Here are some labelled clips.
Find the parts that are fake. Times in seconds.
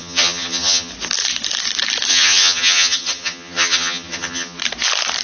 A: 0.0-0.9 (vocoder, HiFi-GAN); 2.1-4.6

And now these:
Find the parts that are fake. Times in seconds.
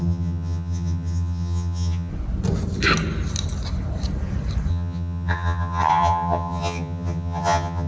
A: 0.0-2.1 (vocoder, HiFi-GAN); 4.7-7.9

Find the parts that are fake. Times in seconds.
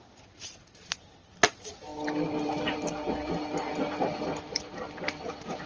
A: none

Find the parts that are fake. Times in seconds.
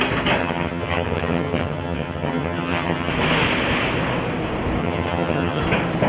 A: 0.4-3.1 (vocoder, HiFi-GAN); 4.8-5.6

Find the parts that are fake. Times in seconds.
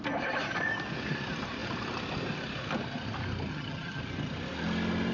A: 3.5-4.0 (vocoder, HiFi-GAN)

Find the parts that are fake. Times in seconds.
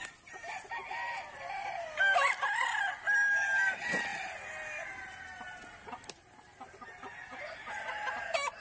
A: none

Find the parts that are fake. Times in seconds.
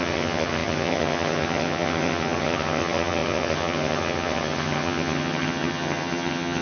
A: 0.0-6.6 (vocoder, HiFi-GAN)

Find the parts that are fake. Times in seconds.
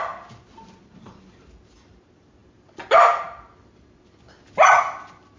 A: none